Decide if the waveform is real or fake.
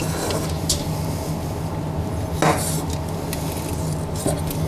real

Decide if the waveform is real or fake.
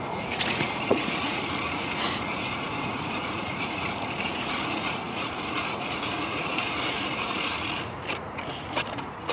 fake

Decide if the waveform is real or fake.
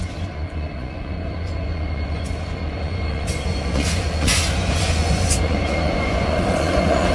fake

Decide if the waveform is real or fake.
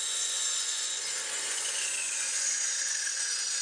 fake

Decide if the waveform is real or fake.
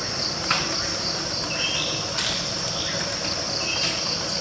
real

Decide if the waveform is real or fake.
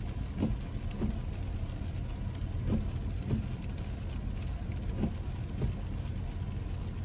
real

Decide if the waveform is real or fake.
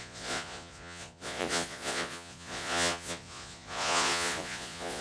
fake